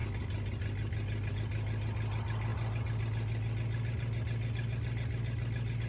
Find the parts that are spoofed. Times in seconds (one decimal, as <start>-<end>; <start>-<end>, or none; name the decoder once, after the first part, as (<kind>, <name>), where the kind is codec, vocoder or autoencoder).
none